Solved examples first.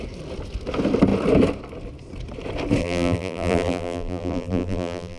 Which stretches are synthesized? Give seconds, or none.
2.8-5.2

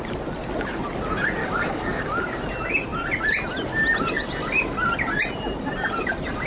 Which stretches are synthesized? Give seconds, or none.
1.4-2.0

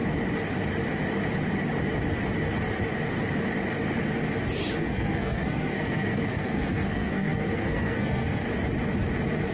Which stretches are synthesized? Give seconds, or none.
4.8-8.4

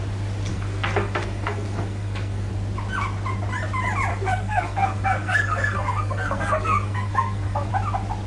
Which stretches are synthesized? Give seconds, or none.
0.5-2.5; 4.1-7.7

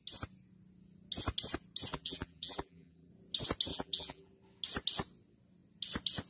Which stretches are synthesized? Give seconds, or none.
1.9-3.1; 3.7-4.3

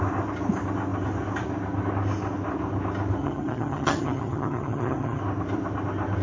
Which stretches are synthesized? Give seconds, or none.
3.2-5.2